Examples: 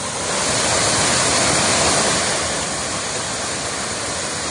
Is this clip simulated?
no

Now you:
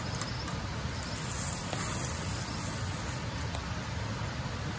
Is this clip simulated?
no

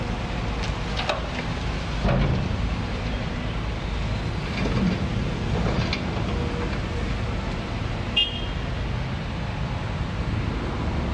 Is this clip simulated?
no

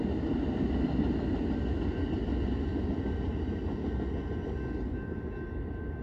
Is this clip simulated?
no